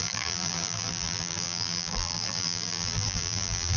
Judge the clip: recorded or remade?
remade